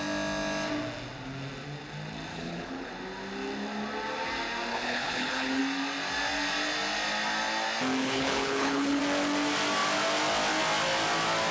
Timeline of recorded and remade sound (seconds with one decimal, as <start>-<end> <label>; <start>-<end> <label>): 0.0-2.3 recorded; 2.3-2.9 remade; 2.9-4.7 recorded; 4.7-5.6 remade; 5.6-8.0 recorded; 8.0-9.0 remade; 9.0-11.5 recorded